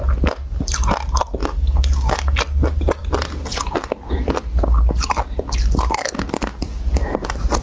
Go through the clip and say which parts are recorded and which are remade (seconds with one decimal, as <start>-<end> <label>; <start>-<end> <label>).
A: 0.0-1.4 recorded; 1.4-2.4 remade; 2.4-7.6 recorded